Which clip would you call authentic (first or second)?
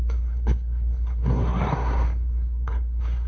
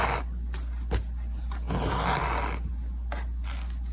second